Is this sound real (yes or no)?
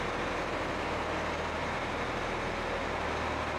yes